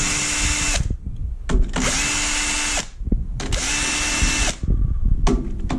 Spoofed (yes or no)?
no